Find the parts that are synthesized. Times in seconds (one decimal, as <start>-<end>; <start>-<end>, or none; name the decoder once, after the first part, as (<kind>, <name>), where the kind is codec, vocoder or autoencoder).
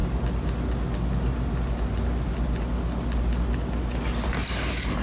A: none